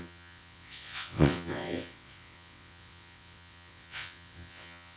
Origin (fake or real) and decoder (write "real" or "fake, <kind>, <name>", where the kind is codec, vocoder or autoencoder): fake, vocoder, WaveNeXt